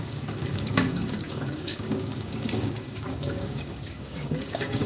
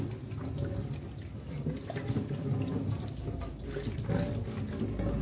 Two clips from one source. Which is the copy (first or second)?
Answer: first